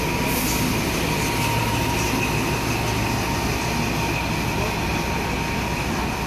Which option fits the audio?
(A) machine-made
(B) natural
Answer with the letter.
B